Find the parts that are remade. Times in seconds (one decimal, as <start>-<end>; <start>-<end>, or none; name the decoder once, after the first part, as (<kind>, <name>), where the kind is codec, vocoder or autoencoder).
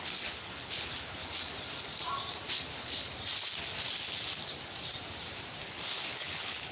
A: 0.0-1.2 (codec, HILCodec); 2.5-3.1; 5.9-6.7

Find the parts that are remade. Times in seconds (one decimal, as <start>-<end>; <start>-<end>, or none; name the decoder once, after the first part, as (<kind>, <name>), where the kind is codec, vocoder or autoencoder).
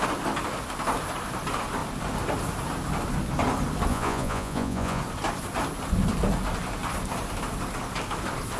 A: 3.9-5.0 (vocoder, Vocos)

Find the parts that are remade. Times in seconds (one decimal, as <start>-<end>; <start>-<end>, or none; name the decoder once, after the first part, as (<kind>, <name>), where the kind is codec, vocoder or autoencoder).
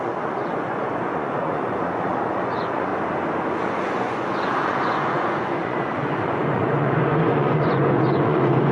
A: 0.0-2.9 (vocoder, Vocos); 3.5-8.7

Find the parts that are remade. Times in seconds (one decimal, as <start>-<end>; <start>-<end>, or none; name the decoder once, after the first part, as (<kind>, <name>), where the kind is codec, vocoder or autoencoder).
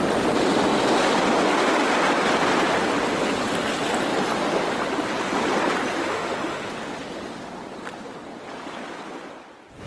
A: 6.0-6.7 (autoencoder, DAC-VAE)